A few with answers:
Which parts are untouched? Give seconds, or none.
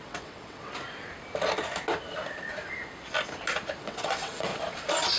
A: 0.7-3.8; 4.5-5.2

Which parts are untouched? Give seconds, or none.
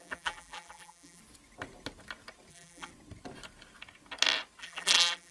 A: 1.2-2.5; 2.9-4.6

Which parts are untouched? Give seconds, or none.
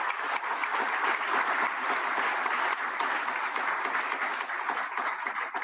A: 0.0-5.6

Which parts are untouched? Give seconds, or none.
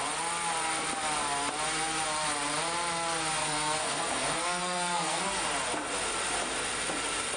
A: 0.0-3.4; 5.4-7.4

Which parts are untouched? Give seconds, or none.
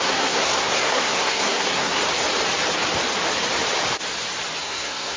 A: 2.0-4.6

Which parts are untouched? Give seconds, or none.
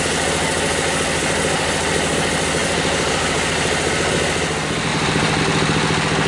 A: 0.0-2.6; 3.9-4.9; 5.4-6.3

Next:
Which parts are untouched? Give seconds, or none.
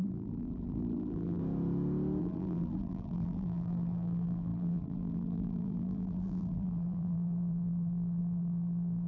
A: 1.4-2.2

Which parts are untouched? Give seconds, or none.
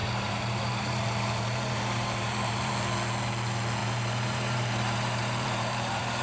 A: 2.7-3.8